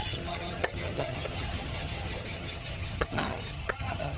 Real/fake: fake